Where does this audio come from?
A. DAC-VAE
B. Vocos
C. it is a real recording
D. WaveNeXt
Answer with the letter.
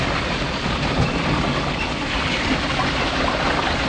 C